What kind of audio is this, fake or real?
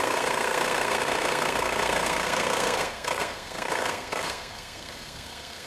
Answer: fake